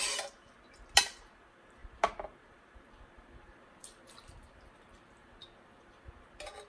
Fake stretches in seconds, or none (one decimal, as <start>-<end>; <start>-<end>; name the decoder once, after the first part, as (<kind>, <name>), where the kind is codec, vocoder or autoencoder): none